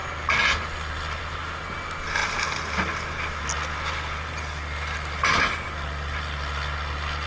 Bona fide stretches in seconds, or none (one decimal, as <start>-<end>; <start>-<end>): 0.0-7.3